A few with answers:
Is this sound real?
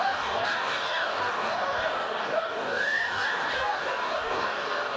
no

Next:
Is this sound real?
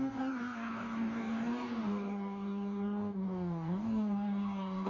no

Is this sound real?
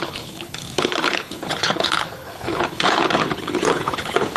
no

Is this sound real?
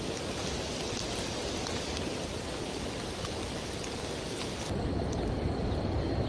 yes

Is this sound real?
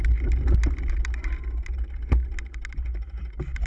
yes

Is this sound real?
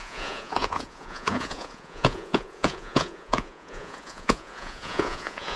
no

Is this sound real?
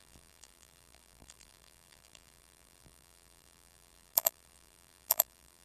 no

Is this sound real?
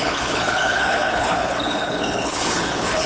no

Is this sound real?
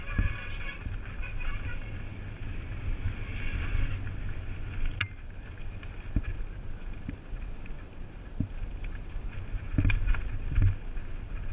yes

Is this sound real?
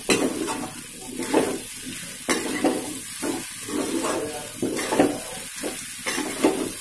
yes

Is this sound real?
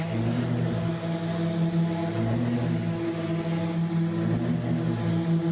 yes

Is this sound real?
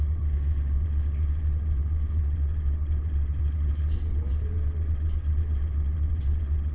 no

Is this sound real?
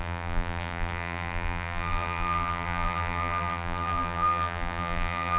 no